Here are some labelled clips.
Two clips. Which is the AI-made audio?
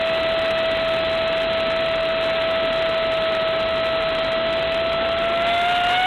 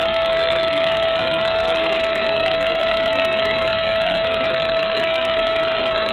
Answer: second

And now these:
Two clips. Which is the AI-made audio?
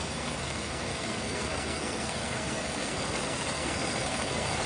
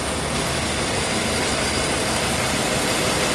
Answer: first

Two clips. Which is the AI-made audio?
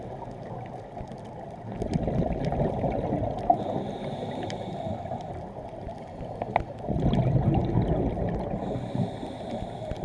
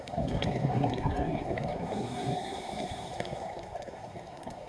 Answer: second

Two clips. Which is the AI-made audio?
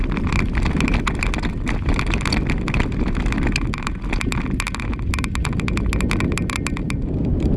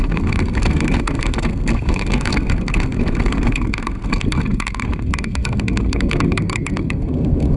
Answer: second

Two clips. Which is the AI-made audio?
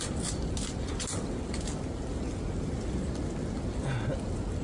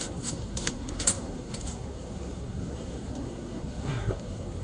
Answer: second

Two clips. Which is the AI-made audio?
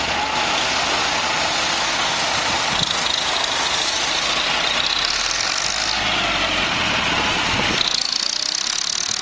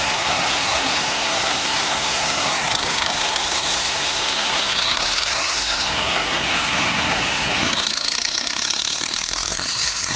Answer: second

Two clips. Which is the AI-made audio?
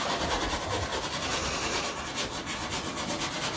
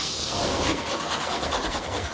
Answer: second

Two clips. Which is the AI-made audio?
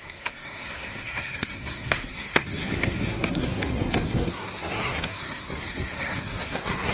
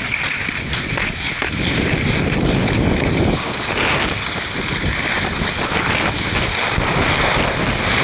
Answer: first